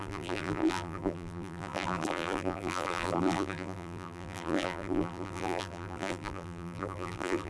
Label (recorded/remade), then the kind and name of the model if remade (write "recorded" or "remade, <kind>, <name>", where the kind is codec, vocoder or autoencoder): remade, vocoder, BigVGAN v2